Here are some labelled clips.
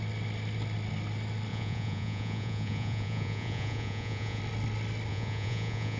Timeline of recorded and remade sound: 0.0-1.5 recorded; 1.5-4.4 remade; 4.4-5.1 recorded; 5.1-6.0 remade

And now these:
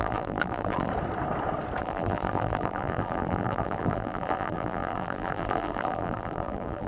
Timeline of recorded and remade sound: 0.0-0.9 remade; 0.9-1.8 recorded; 1.8-6.9 remade

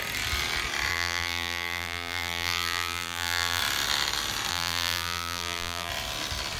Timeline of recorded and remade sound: 0.0-0.9 recorded; 0.9-3.6 remade; 3.6-4.5 recorded; 4.5-5.9 remade; 5.9-6.6 recorded

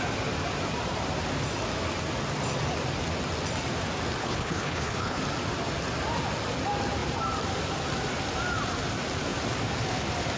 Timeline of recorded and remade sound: 0.0-4.2 recorded; 4.2-5.2 remade; 5.2-10.4 recorded

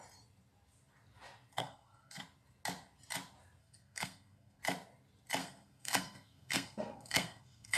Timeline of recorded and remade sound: 0.0-1.6 recorded; 1.6-2.2 remade; 2.2-3.6 recorded; 3.6-4.6 remade; 4.6-5.4 recorded; 5.4-7.8 remade

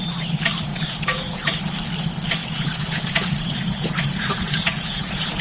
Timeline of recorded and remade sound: 0.0-0.7 recorded; 0.7-1.6 remade; 1.6-2.4 recorded; 2.4-5.4 remade

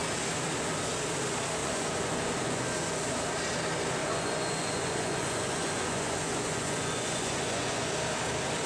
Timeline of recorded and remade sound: 0.0-1.6 recorded; 1.6-3.0 remade; 3.0-4.0 recorded; 4.0-7.9 remade; 7.9-8.7 recorded